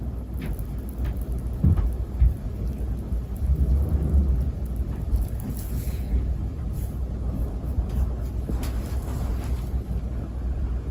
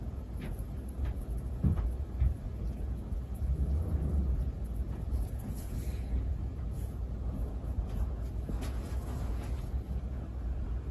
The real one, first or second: first